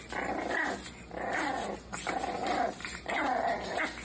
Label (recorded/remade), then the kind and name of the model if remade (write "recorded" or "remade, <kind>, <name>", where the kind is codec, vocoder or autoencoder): recorded